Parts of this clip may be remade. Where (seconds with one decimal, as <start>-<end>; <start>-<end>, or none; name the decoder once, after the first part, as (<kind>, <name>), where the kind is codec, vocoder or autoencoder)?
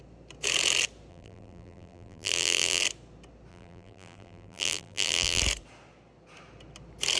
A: 1.1-2.8 (vocoder, BigVGAN v2); 3.5-5.4